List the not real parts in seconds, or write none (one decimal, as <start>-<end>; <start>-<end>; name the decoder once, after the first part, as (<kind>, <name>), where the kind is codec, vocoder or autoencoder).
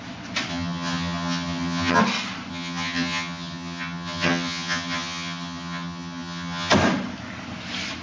0.5-2.0 (vocoder, HiFi-GAN); 2.5-6.7